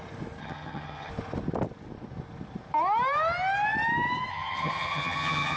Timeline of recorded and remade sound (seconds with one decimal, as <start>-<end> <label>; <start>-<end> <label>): 0.0-0.4 recorded; 0.4-1.1 remade; 1.1-4.3 recorded; 4.3-5.6 remade